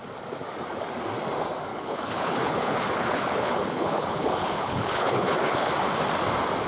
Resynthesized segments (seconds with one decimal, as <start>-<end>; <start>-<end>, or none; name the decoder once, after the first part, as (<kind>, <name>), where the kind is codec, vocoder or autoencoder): 1.7-5.7 (codec, HILCodec)